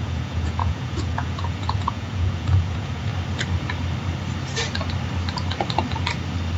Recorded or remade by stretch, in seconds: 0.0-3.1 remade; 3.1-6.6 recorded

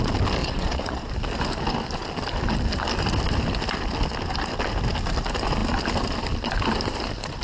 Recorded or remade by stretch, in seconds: 0.0-0.4 recorded; 0.4-1.1 remade; 1.1-7.4 recorded

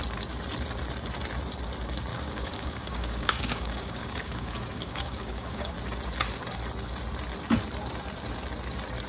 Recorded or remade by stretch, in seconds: 0.0-2.1 recorded; 2.1-5.7 remade; 5.7-9.1 recorded